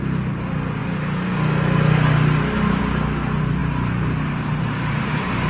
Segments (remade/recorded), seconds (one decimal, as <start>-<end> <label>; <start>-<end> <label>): 0.0-3.6 recorded; 3.6-5.5 remade